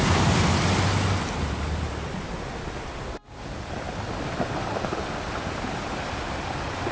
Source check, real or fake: real